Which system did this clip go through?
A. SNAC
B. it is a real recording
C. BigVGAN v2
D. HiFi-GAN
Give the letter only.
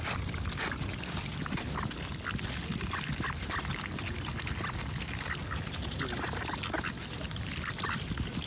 B